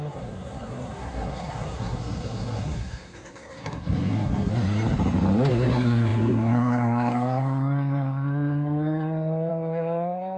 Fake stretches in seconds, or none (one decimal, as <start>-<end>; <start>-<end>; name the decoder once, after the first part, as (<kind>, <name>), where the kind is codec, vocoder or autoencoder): 0.0-4.5 (codec, SNAC); 5.5-10.4